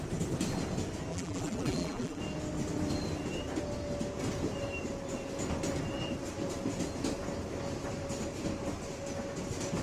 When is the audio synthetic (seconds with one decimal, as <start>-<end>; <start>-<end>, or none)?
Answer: 1.1-2.2